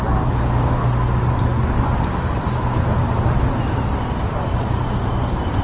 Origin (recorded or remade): recorded